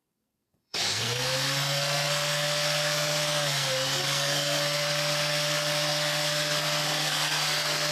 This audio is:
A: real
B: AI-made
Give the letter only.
B